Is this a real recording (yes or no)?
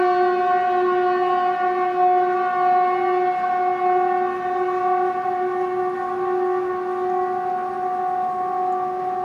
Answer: yes